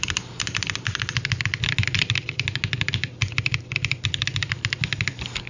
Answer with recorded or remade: recorded